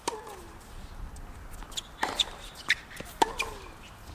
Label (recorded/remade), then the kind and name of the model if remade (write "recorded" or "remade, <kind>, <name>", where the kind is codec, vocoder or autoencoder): recorded